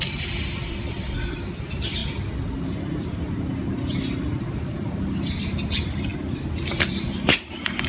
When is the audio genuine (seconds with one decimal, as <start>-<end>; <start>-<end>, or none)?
2.0-4.5; 6.1-6.7